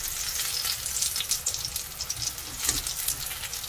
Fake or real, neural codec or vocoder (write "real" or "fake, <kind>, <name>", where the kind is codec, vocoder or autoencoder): real